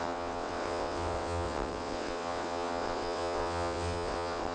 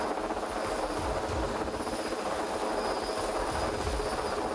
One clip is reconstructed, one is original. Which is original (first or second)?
second